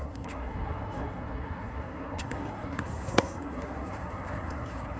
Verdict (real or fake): fake